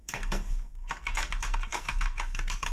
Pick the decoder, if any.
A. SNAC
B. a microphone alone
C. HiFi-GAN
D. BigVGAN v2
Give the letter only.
A